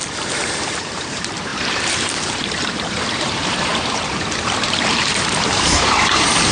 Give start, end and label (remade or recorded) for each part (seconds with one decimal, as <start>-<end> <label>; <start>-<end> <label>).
0.0-6.5 remade